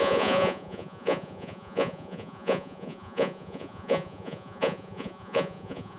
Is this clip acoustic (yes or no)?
no